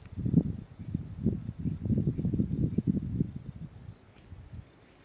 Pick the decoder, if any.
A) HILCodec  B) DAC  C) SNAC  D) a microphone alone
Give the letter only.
D